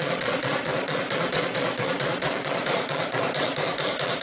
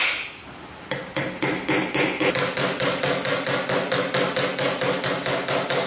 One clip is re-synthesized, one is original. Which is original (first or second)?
second